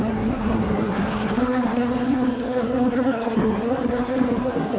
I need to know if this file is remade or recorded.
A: remade